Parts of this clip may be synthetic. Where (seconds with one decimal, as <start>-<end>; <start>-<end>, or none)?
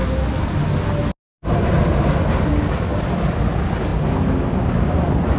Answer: none